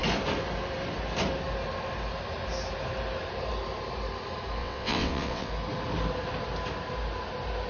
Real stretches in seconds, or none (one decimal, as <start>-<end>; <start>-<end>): 0.0-4.6; 5.5-7.7